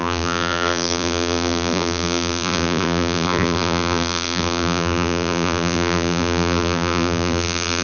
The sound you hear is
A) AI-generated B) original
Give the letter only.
A